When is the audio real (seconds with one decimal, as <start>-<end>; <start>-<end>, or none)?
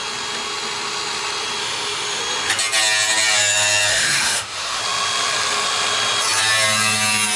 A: 0.0-1.6; 2.2-3.9; 4.8-7.4